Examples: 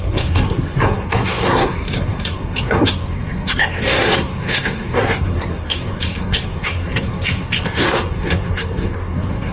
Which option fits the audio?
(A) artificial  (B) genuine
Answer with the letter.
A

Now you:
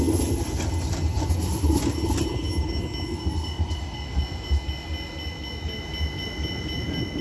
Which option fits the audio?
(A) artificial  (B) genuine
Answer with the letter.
B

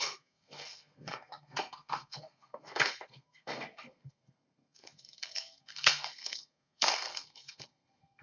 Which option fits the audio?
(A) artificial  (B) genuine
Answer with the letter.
A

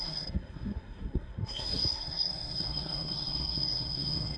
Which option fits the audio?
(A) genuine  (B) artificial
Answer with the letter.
B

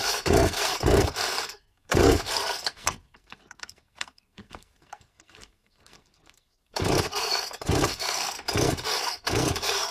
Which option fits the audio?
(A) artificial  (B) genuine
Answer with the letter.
A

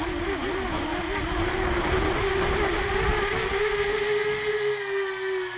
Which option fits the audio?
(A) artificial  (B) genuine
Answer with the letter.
B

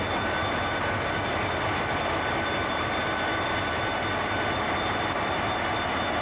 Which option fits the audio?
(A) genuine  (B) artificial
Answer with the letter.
A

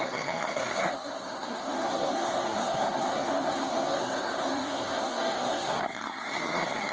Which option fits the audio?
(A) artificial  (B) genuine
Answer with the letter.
A